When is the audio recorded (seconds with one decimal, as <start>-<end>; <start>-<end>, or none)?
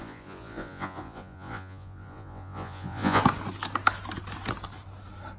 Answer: 3.2-5.4